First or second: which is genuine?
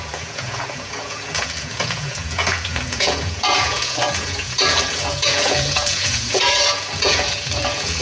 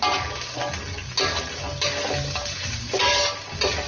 second